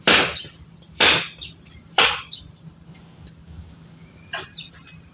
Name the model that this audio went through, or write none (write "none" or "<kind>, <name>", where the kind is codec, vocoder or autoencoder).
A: vocoder, BigVGAN v2